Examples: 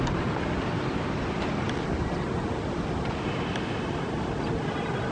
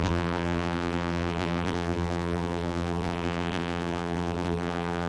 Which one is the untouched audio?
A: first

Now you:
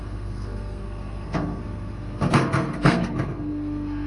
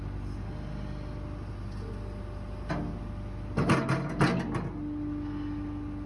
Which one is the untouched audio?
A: second